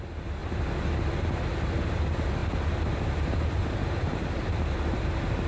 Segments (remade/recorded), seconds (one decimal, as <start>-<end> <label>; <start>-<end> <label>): 0.0-0.4 recorded; 0.4-0.9 remade; 0.9-2.4 recorded; 2.4-5.0 remade; 5.0-5.5 recorded